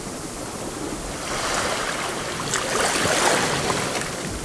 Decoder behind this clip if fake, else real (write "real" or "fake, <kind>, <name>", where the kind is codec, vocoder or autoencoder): real